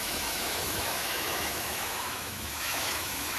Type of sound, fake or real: fake